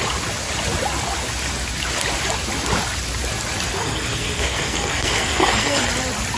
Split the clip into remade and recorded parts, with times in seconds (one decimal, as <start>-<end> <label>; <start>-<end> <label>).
0.0-3.8 recorded; 3.8-5.9 remade; 5.9-6.4 recorded